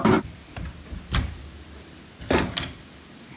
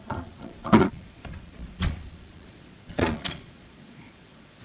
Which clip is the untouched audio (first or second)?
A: first